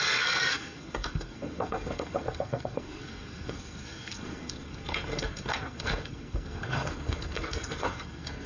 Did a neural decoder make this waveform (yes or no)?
yes